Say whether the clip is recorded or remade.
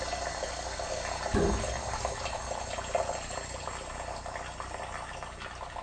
recorded